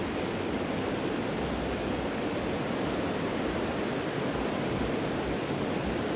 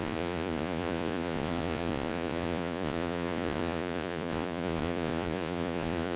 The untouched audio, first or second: first